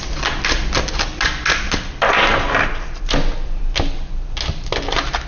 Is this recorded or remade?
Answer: recorded